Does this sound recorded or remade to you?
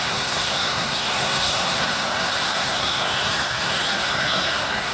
remade